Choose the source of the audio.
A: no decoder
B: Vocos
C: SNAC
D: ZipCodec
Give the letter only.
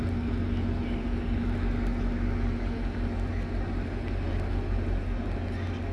A